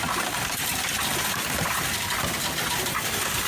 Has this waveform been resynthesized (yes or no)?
yes